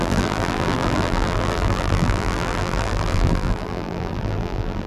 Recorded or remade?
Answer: remade